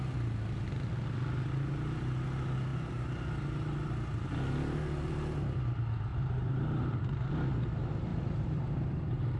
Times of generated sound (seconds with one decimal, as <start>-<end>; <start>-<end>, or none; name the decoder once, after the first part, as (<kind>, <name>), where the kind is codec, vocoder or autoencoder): 6.1-7.3 (vocoder, BigVGAN v2); 8.1-9.0